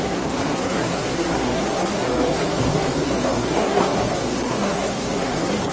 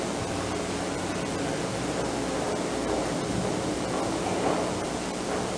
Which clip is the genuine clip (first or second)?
second